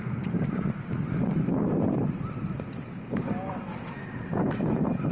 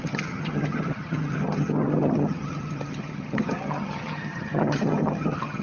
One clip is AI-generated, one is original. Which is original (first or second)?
first